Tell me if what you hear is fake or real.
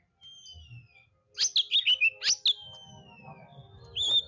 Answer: real